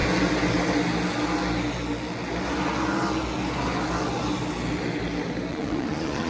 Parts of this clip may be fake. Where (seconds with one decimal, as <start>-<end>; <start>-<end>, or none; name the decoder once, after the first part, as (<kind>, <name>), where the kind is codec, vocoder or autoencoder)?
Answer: 5.5-6.3 (vocoder, Vocos)